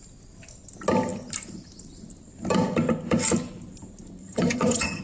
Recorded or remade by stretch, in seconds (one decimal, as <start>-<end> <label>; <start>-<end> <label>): 0.0-4.2 recorded; 4.2-5.0 remade